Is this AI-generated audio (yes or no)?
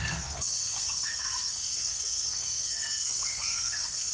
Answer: yes